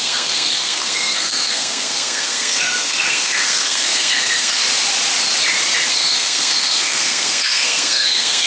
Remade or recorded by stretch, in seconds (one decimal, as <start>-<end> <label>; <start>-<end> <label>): 0.0-4.6 remade; 4.6-5.9 recorded; 5.9-8.5 remade